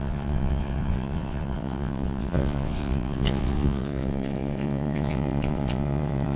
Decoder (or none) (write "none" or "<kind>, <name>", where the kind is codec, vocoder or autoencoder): vocoder, WaveNeXt